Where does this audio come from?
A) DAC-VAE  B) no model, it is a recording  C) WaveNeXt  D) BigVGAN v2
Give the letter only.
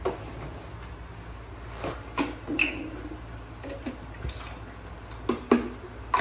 B